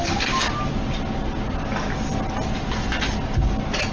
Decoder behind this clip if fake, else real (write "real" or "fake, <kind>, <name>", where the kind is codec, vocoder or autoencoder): real